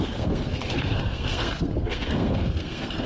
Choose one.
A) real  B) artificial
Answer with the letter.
B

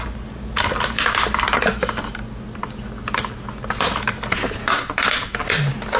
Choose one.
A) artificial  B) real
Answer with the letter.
B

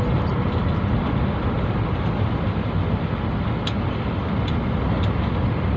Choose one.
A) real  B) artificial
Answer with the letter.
A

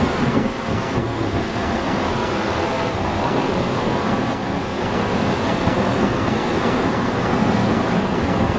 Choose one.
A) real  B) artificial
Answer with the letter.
B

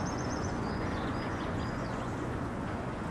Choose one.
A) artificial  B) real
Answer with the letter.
A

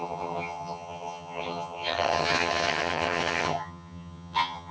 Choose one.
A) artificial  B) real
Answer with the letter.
A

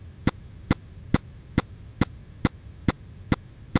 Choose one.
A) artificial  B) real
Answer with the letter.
B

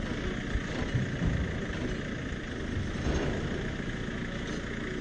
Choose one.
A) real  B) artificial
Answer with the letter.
A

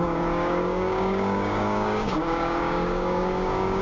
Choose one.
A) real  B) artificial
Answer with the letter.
B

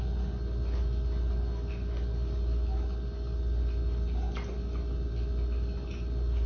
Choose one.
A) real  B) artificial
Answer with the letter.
A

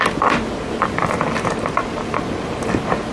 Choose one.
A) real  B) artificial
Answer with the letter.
A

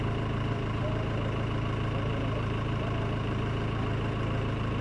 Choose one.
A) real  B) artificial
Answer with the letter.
B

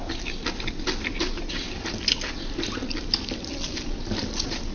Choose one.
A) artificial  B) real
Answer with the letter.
B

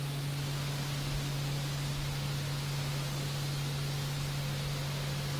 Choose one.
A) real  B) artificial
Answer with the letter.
A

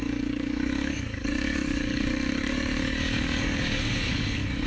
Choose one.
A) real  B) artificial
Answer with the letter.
B